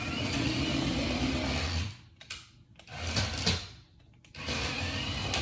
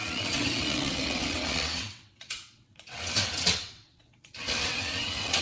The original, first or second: first